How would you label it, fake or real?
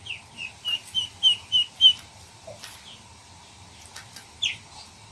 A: real